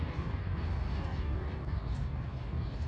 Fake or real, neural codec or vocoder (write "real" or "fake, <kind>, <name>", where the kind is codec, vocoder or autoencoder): fake, codec, DAC